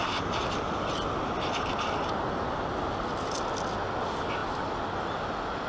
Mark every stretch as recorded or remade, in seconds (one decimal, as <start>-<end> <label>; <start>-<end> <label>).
0.0-5.7 recorded